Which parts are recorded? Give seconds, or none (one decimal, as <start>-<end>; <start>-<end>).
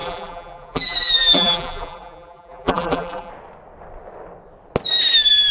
3.3-5.5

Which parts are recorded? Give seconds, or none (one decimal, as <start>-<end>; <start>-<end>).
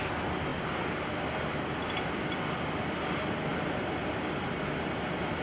0.0-3.5; 4.1-5.4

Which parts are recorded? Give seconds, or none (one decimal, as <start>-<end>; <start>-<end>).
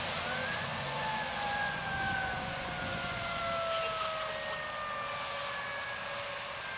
0.0-0.4; 3.4-6.8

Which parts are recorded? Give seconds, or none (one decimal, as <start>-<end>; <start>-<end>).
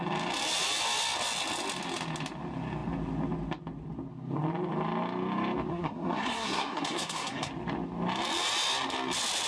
0.0-5.7; 7.5-9.5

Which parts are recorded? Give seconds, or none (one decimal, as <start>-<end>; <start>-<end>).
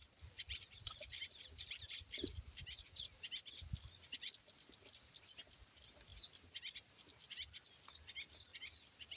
3.2-8.5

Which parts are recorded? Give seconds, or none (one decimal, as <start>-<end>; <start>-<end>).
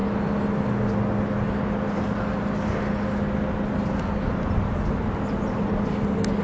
0.0-6.4